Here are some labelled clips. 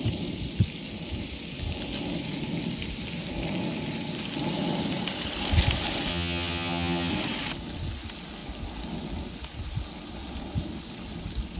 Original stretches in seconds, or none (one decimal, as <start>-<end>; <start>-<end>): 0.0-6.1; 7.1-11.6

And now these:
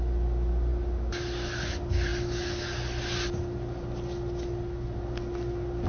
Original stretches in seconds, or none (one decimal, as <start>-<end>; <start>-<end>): 0.0-5.9

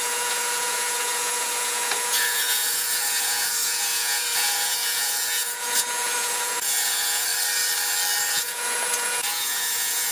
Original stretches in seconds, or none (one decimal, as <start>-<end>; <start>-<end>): 7.3-8.3

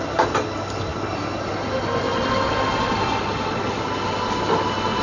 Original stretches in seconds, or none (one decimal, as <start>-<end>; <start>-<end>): 0.0-5.0